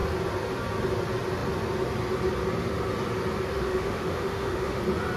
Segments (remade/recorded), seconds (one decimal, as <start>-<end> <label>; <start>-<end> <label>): 0.0-3.5 recorded; 3.5-4.8 remade; 4.8-5.2 recorded